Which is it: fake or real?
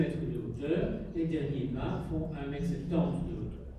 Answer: real